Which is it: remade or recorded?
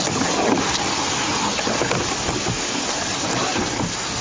recorded